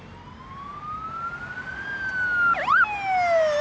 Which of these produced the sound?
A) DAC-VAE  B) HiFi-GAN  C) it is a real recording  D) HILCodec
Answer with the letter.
C